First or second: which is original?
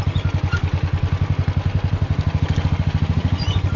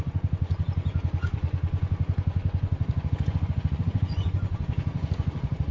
first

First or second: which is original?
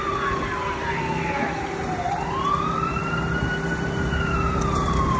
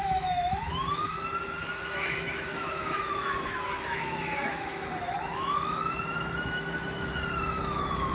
first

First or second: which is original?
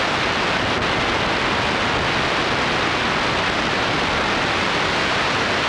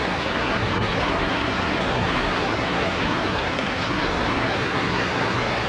first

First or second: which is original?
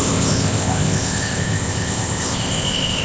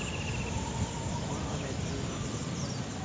second